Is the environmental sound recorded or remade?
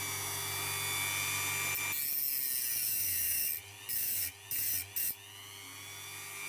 recorded